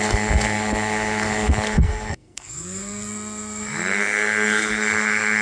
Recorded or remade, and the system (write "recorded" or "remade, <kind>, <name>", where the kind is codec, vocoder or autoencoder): remade, codec, SNAC